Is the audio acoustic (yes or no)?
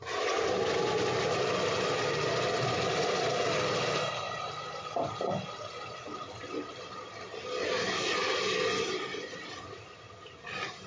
yes